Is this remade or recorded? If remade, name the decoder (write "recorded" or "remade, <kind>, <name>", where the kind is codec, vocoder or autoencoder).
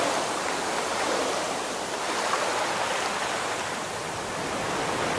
recorded